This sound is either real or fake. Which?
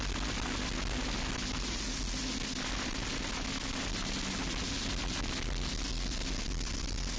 real